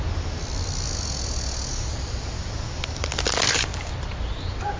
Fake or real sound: real